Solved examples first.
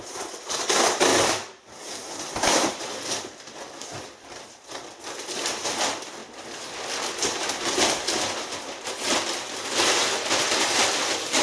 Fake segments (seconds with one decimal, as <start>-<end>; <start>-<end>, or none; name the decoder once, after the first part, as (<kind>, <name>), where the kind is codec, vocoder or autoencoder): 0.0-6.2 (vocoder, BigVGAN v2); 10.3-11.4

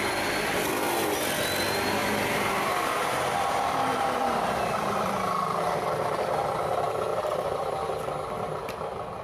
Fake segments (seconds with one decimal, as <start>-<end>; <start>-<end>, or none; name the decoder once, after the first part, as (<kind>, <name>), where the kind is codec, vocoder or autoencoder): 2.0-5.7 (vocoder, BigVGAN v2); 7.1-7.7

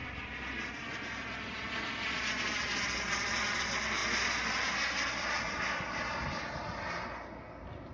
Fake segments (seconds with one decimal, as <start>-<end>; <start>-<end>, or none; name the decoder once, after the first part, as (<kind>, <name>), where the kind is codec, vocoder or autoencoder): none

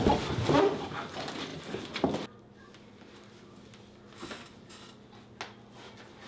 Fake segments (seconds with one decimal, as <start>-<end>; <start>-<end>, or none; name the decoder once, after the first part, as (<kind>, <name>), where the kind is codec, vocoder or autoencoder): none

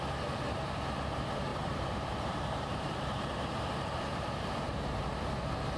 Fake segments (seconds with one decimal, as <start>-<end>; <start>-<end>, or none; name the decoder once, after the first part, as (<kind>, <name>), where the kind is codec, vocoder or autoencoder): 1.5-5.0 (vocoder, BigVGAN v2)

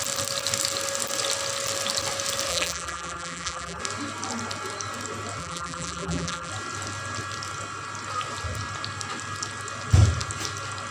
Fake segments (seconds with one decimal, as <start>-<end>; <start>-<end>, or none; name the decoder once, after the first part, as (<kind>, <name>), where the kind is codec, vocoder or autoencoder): 2.5-3.8 (vocoder, BigVGAN v2); 5.4-6.5

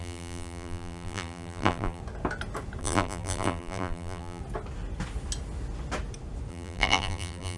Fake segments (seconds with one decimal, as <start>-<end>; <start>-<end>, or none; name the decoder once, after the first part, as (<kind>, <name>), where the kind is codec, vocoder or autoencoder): 0.0-2.0 (vocoder, BigVGAN v2); 2.8-4.4; 6.5-7.6